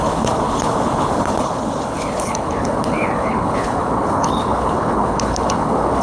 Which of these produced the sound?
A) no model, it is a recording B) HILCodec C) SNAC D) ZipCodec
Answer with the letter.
B